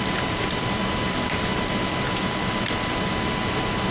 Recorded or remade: recorded